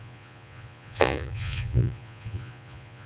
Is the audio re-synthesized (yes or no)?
yes